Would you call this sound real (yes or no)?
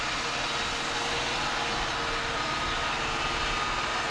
yes